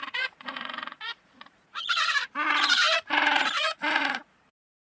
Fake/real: fake